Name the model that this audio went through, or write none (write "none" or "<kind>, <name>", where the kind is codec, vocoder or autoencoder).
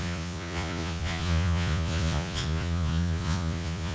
vocoder, Vocos